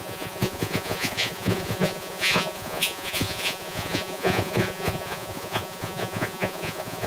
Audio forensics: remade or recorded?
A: remade